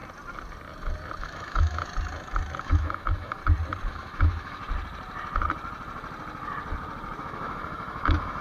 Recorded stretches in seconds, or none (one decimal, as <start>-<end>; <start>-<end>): 0.0-1.2; 1.8-2.6; 3.4-3.9; 4.6-7.2